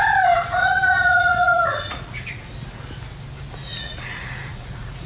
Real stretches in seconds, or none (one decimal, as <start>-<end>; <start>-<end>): 0.0-0.6; 2.3-3.6